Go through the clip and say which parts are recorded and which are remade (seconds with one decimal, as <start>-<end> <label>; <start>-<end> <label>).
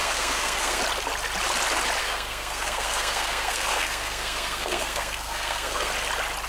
0.0-0.8 remade; 0.8-2.0 recorded; 2.0-5.9 remade; 5.9-6.5 recorded